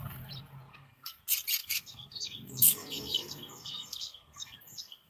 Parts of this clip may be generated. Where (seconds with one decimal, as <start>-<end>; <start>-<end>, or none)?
0.7-1.2; 1.6-5.1